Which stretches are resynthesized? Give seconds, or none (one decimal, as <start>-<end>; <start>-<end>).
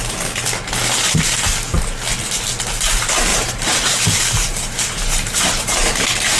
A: 3.3-6.4